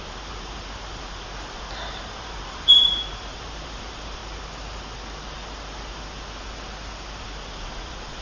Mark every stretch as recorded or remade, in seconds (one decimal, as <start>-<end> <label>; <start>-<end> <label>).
0.0-4.2 remade; 4.2-7.2 recorded; 7.2-8.2 remade